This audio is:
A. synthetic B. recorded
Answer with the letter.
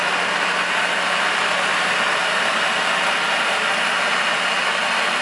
B